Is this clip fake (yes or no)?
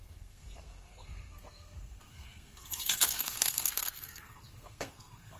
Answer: yes